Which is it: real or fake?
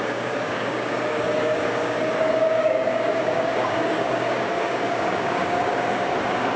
fake